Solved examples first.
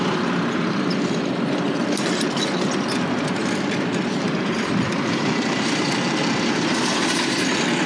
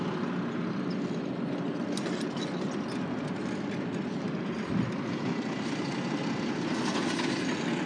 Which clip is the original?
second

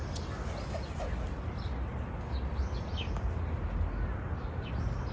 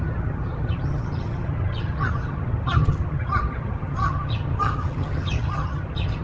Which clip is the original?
first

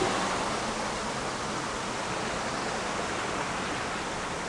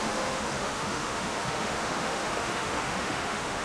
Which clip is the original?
first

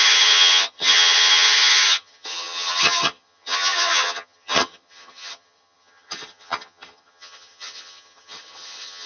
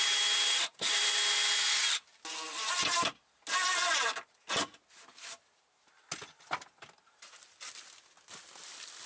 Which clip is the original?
second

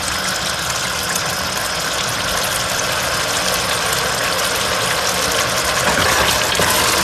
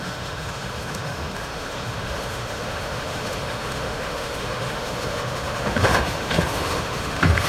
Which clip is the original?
first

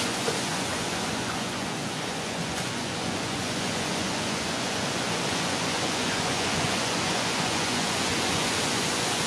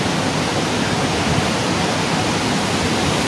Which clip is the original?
second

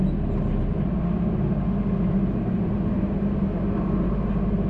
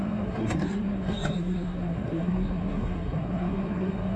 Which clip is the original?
first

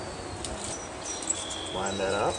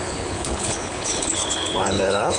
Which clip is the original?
first